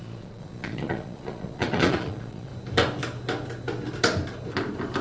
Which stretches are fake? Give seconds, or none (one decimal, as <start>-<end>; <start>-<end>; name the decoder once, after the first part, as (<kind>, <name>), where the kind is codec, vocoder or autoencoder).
0.0-2.5 (vocoder, Vocos)